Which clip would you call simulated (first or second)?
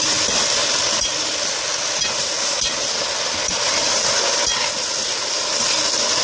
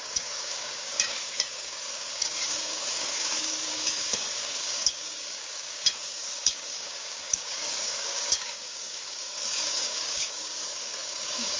second